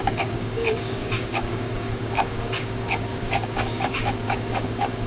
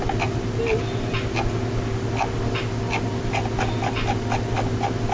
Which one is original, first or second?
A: second